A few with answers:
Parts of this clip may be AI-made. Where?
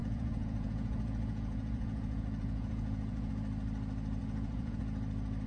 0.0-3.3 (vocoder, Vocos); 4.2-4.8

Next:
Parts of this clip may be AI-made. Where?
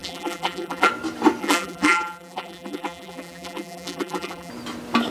0.0-0.9 (vocoder, BigVGAN v2); 1.4-4.5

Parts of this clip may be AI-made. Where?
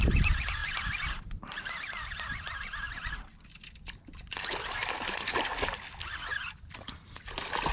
none